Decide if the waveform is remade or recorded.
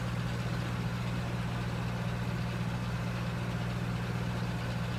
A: recorded